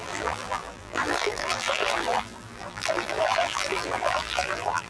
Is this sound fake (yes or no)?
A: yes